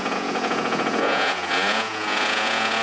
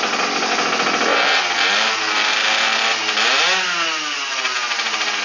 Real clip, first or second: second